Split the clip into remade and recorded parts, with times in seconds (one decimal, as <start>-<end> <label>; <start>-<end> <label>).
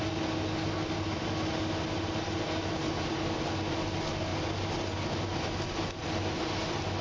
0.0-7.0 recorded